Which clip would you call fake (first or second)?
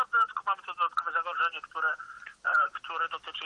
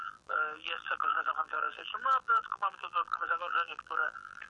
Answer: second